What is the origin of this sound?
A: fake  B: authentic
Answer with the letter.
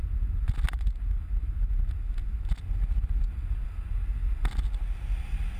B